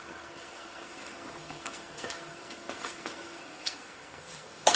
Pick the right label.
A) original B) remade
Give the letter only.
B